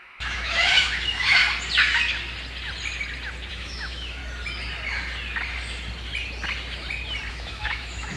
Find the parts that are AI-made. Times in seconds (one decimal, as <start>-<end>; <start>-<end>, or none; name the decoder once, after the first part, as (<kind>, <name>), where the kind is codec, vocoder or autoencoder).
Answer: 0.0-1.4 (autoencoder, DAC-VAE); 3.5-4.2; 7.3-8.2